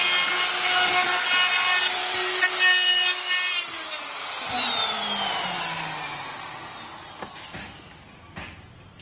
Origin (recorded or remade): recorded